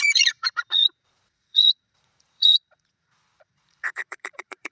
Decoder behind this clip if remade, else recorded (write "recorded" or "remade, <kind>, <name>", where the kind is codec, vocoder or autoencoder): remade, vocoder, Vocos